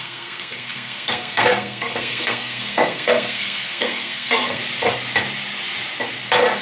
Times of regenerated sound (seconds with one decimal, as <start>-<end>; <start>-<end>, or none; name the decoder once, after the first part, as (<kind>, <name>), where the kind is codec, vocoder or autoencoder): 0.0-4.6 (codec, SNAC)